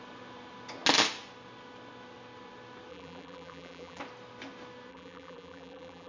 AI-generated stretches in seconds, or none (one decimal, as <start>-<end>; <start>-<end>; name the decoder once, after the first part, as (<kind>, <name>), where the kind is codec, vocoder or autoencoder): 2.9-4.0 (vocoder, BigVGAN v2); 4.9-6.1